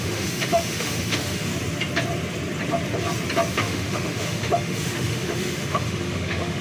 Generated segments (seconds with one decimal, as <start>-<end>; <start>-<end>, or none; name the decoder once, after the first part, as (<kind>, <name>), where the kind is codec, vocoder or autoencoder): 0.0-1.5 (autoencoder, DAC-VAE); 3.5-6.6